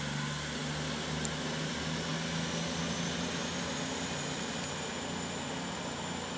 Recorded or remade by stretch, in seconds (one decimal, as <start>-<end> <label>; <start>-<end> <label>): 0.0-6.4 recorded